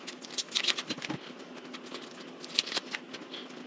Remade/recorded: recorded